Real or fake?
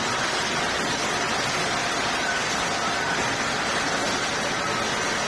real